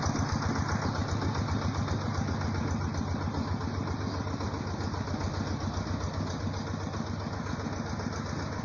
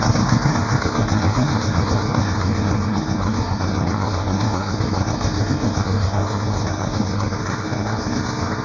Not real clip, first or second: second